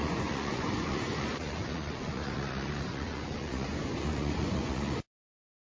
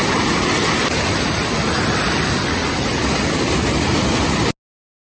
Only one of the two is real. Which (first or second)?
second